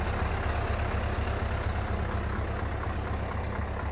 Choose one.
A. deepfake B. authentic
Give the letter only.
B